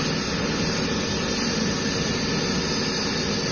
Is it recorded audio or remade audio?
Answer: recorded